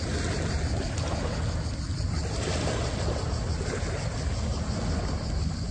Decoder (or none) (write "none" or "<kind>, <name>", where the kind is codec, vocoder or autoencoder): none